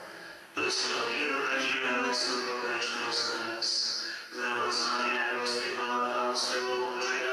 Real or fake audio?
fake